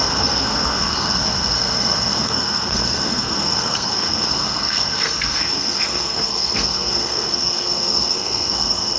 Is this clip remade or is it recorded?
remade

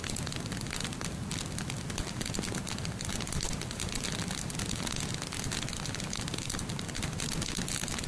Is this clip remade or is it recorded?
recorded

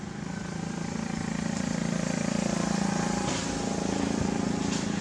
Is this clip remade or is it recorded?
recorded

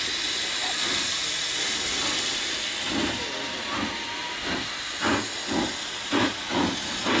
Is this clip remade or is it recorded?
recorded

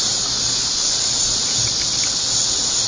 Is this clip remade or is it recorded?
recorded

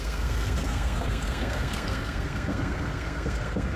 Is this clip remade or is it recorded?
remade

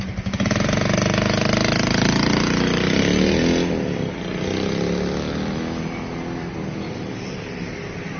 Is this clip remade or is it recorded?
recorded